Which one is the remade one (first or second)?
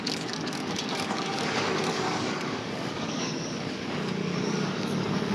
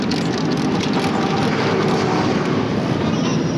first